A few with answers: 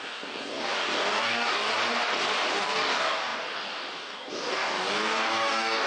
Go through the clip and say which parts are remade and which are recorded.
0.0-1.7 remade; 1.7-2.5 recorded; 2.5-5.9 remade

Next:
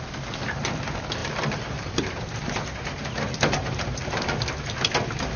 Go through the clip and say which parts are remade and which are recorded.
0.0-1.2 recorded; 1.2-4.4 remade; 4.4-5.4 recorded

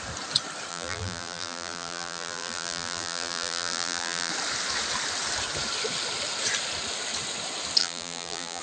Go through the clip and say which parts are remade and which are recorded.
0.0-0.7 recorded; 0.7-4.3 remade; 4.3-7.8 recorded; 7.8-8.6 remade

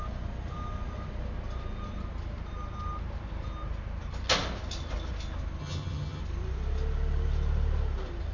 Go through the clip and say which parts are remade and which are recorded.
0.0-5.6 recorded; 5.6-6.2 remade; 6.2-8.3 recorded

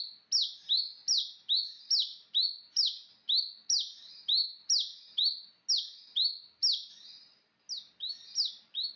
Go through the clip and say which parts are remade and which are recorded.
0.0-9.0 recorded

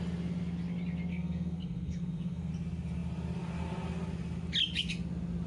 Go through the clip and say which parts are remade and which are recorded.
0.0-1.1 recorded; 1.1-2.5 remade; 2.5-5.5 recorded

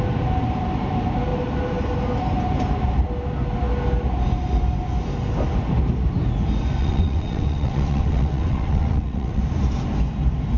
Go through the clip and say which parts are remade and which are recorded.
0.0-6.8 recorded; 6.8-9.4 remade; 9.4-10.6 recorded